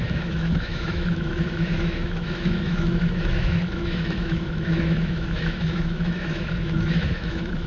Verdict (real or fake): fake